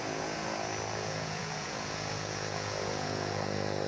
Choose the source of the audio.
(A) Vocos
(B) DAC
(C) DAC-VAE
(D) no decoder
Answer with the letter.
A